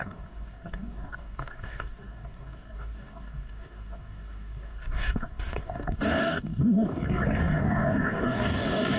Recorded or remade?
remade